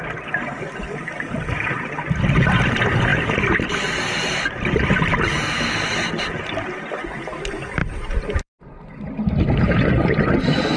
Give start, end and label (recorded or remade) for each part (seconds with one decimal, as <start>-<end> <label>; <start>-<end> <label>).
0.0-7.8 recorded; 7.8-8.6 remade; 8.6-10.8 recorded